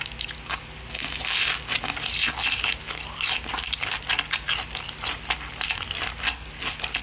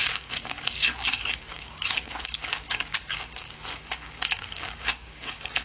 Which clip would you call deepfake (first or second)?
second